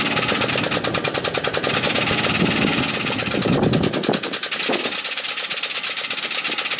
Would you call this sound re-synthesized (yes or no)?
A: no